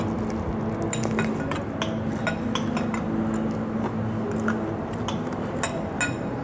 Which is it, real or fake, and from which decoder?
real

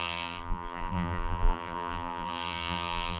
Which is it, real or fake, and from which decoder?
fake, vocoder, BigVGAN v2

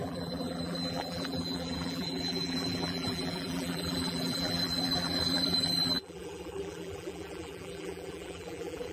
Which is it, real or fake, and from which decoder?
fake, vocoder, BigVGAN v2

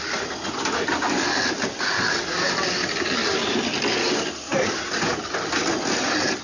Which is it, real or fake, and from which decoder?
real